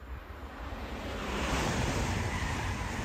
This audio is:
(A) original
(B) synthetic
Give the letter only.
B